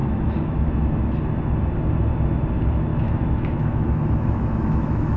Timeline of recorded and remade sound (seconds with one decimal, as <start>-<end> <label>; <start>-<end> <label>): 0.0-0.7 remade; 0.7-2.9 recorded; 2.9-5.2 remade

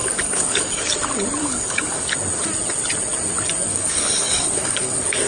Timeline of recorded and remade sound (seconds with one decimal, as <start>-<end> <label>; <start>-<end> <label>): 0.0-0.8 remade; 0.8-1.4 recorded; 1.4-2.1 remade; 2.1-3.7 recorded; 3.7-5.3 remade

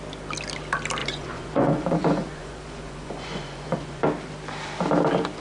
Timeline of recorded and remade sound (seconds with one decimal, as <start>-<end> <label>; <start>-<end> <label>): 0.0-1.0 recorded; 1.0-4.0 remade; 4.0-5.4 recorded

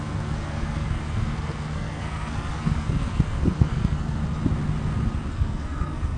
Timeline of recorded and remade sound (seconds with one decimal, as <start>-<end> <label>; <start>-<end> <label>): 0.0-4.2 remade; 4.2-5.3 recorded; 5.3-6.2 remade

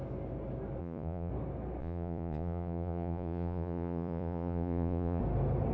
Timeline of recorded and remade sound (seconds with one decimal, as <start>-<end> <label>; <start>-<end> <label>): 0.0-0.8 recorded; 0.8-1.3 remade; 1.3-1.8 recorded; 1.8-5.2 remade; 5.2-5.7 recorded

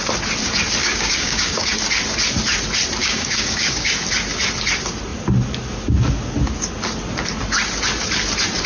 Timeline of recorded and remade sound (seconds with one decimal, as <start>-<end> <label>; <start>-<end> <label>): 0.0-0.8 recorded; 0.8-1.7 remade; 1.7-3.0 recorded; 3.0-3.9 remade; 3.9-8.7 recorded

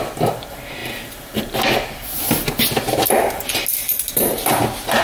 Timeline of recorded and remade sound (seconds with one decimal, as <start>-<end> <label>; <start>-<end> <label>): 0.0-3.8 recorded; 3.8-5.0 remade

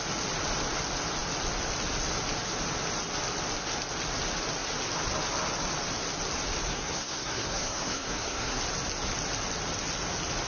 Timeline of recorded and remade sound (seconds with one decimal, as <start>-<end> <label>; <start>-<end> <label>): 0.0-6.7 recorded; 6.7-8.6 remade; 8.6-10.5 recorded